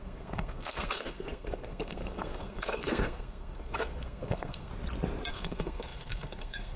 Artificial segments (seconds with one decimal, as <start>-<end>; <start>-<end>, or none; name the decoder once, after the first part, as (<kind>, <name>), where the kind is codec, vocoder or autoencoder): 0.0-4.7 (codec, SNAC); 5.3-6.8